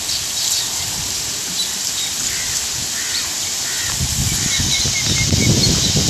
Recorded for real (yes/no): yes